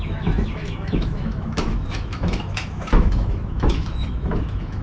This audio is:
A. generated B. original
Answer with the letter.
A